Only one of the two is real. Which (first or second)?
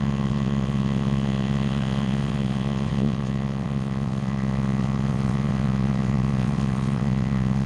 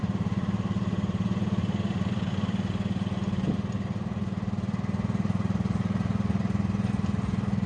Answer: second